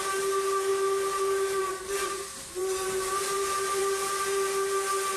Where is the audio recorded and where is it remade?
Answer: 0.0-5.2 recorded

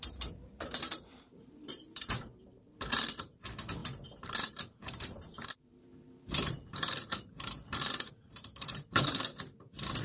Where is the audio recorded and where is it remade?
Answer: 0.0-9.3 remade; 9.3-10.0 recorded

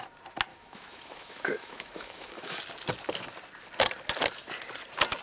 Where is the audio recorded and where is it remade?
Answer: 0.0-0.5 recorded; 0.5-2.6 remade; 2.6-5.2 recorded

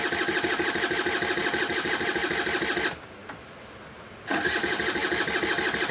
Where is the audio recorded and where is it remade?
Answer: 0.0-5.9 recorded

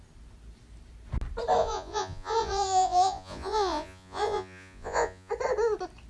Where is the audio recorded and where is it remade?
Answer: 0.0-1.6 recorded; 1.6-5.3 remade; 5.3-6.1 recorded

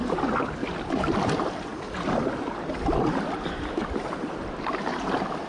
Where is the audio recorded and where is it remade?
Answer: 0.0-5.5 recorded